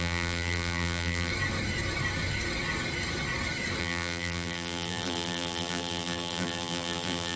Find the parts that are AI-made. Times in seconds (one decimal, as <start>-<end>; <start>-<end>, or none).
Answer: 0.0-1.3; 3.8-7.4